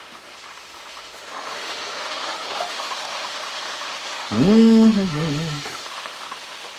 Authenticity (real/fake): fake